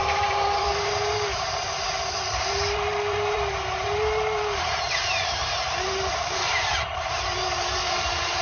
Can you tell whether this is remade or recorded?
remade